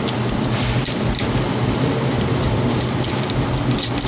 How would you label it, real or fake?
real